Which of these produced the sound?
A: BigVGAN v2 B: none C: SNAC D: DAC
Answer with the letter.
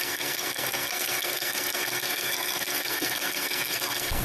C